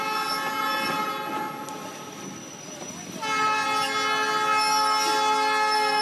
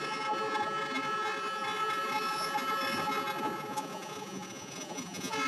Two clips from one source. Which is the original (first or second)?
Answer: first